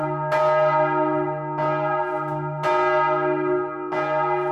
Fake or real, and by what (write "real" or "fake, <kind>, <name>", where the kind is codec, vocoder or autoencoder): real